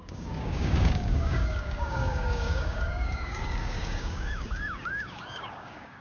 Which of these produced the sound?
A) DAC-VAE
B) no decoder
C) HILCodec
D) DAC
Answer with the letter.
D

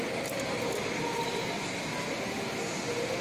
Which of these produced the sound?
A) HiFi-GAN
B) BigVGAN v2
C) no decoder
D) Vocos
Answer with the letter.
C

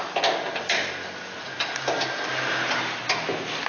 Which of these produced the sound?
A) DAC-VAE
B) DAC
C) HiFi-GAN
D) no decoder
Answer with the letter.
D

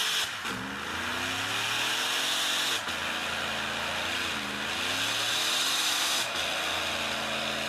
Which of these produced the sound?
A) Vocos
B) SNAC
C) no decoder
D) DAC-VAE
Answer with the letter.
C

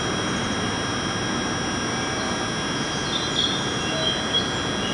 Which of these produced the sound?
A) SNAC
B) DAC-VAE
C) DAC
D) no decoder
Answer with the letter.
D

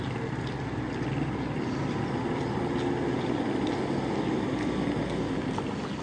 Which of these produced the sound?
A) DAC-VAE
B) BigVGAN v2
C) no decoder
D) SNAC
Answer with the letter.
C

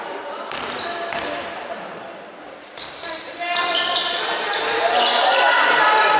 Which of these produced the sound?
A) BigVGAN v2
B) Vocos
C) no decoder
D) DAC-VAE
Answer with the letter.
A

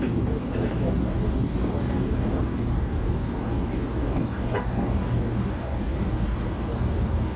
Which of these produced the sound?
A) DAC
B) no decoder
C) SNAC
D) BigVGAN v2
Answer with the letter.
A